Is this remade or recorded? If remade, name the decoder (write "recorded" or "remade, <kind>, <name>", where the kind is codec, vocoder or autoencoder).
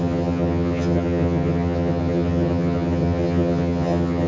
remade, vocoder, HiFi-GAN